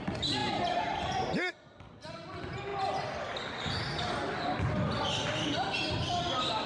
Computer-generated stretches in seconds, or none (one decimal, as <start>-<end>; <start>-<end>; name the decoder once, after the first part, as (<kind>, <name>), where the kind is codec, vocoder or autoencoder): 0.4-1.5 (vocoder, BigVGAN v2); 5.5-6.2